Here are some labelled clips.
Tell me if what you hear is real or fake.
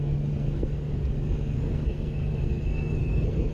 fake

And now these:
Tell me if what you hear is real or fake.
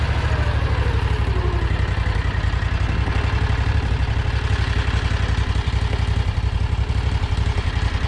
real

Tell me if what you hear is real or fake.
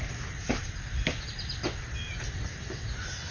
real